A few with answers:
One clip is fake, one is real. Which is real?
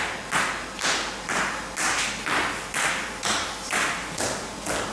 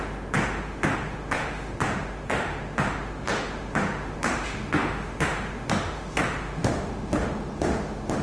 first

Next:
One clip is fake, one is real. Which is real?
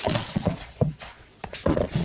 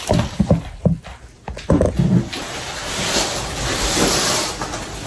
second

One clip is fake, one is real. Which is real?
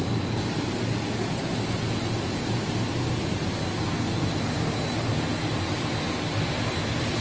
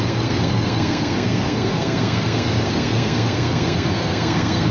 first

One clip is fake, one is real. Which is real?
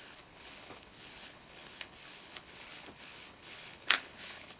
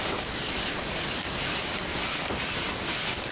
second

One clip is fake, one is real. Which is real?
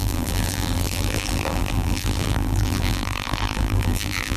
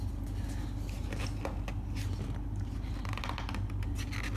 second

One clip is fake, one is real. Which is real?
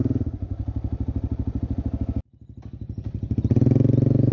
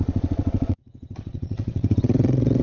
first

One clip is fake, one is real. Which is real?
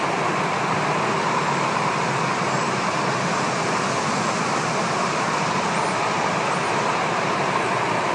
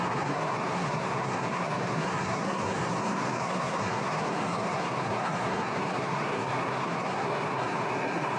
first